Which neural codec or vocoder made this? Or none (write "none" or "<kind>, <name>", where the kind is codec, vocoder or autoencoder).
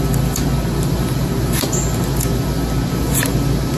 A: none